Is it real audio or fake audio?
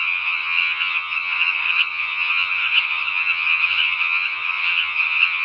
fake